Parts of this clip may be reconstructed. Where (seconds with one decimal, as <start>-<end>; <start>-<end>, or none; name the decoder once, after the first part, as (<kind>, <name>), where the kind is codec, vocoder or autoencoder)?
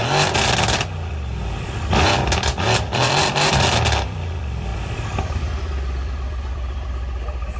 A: 1.1-7.6 (vocoder, BigVGAN v2)